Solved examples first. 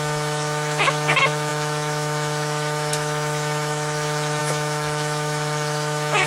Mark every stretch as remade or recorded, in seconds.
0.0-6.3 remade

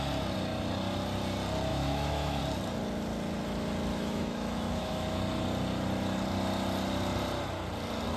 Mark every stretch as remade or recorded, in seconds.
0.0-1.7 recorded; 1.7-2.4 remade; 2.4-3.9 recorded; 3.9-5.2 remade; 5.2-8.2 recorded